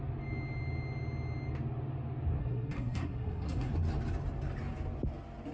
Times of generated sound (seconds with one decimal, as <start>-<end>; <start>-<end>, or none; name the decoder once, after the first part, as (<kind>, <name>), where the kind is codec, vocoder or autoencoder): 2.4-3.7 (codec, SNAC)